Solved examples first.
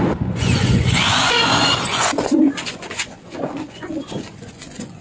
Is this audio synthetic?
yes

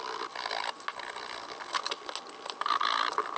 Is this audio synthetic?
no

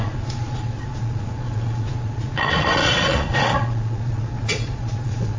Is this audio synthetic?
yes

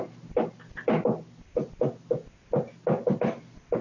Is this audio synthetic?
no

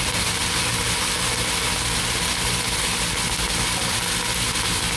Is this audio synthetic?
no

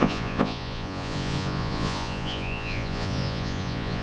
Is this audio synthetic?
yes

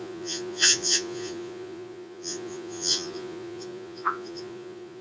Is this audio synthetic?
yes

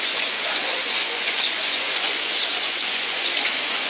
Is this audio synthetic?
yes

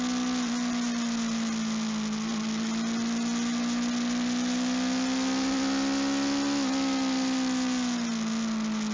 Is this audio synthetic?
no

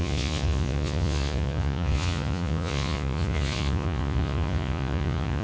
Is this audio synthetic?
yes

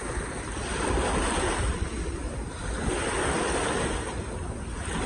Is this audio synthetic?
no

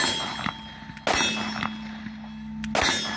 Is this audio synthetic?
no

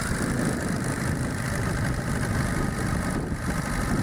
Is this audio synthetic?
no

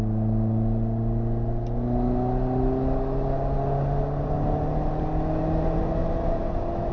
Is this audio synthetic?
no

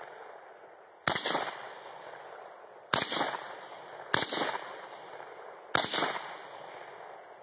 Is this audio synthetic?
no